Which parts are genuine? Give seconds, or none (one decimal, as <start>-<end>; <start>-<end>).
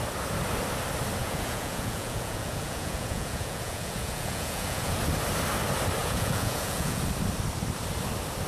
0.0-1.2; 5.0-6.0; 7.0-8.5